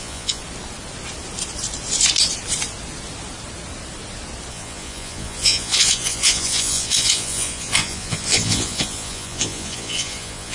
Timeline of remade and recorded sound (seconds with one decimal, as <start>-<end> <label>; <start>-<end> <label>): 0.0-0.4 remade; 0.4-4.5 recorded; 4.5-10.5 remade